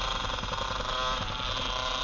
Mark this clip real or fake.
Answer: real